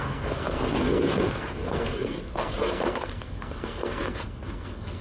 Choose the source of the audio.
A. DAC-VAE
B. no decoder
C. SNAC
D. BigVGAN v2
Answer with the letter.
C